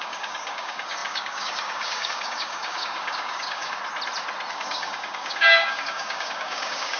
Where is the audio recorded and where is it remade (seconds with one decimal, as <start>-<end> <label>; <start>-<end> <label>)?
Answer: 0.0-3.8 remade; 3.8-4.5 recorded; 4.5-7.0 remade